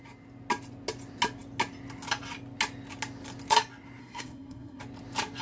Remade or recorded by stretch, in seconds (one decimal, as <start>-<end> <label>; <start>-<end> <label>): 0.0-4.0 recorded; 4.0-4.8 remade; 4.8-5.4 recorded